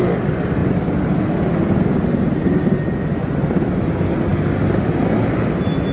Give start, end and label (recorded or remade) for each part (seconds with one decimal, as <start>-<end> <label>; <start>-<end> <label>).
0.0-5.9 recorded